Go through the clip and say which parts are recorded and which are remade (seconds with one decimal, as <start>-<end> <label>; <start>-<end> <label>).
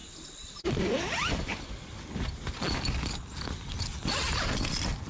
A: 0.0-5.1 recorded